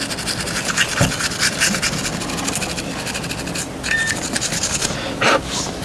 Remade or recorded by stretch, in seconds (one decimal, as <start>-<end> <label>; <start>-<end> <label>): 0.0-5.8 recorded